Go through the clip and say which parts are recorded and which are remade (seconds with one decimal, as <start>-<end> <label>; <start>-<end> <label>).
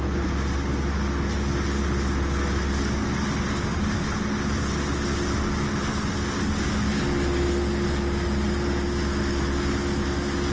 0.0-10.5 recorded